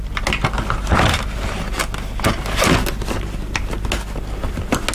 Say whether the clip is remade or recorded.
recorded